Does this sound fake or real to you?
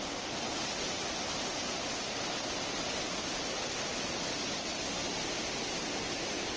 real